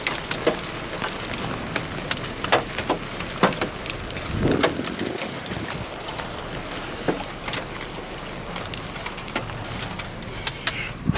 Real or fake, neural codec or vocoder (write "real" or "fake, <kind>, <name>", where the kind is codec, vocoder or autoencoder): real